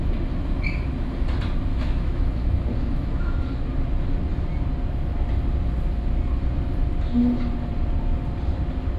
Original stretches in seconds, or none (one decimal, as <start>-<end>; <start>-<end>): 0.0-1.7; 3.4-9.0